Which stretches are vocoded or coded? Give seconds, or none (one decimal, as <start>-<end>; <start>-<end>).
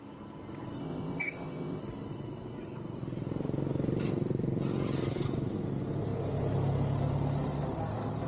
0.8-1.8